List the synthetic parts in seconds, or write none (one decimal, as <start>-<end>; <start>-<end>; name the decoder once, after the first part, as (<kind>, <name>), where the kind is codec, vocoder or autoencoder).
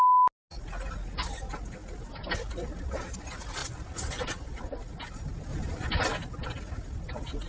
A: 3.6-4.8 (vocoder, BigVGAN v2)